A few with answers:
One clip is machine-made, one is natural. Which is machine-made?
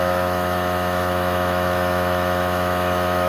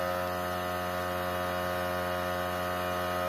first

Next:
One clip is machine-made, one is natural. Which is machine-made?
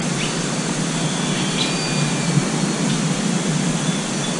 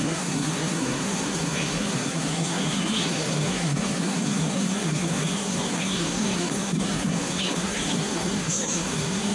second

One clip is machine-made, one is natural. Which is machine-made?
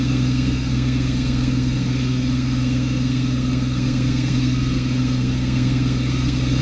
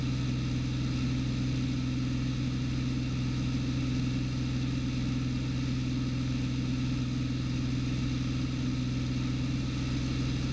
first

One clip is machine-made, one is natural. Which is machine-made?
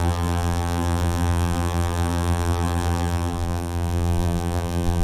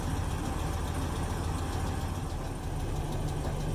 first